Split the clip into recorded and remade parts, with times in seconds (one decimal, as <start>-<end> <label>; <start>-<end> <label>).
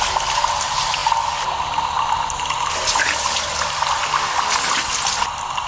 0.0-5.7 recorded